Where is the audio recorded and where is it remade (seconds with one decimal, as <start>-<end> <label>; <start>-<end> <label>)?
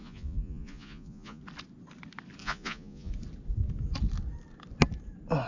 0.0-1.4 remade; 1.4-2.4 recorded; 2.4-3.1 remade; 3.1-5.5 recorded